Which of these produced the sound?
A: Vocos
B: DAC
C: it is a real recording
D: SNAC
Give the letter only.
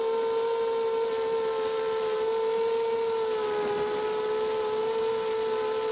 C